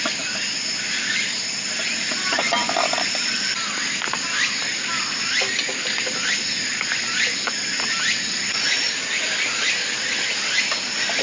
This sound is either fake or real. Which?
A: real